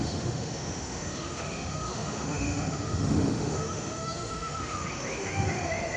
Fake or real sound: fake